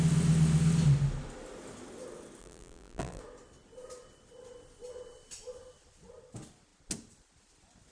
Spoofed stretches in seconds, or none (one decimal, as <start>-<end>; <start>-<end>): 2.4-3.2